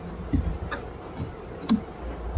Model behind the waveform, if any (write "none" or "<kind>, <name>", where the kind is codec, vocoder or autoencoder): none